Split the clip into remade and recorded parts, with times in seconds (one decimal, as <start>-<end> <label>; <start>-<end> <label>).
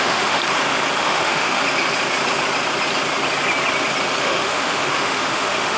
0.0-0.4 remade; 0.4-1.0 recorded; 1.0-1.6 remade; 1.6-4.2 recorded; 4.2-5.8 remade